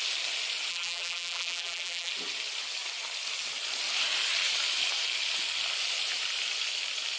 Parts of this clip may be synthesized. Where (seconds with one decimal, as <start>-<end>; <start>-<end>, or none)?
0.7-2.1